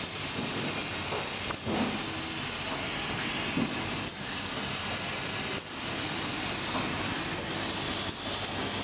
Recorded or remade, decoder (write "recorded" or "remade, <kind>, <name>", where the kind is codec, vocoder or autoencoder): recorded